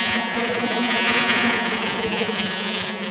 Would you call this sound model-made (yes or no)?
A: yes